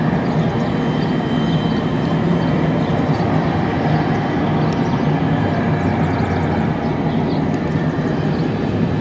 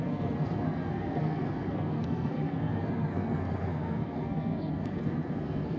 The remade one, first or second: second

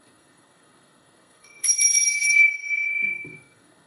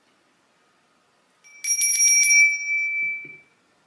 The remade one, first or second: first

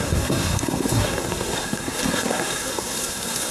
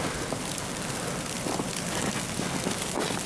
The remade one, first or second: first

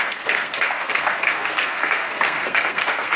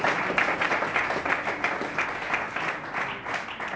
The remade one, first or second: first